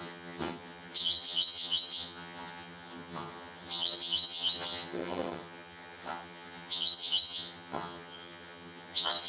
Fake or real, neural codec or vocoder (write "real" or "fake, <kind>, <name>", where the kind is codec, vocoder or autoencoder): fake, vocoder, HiFi-GAN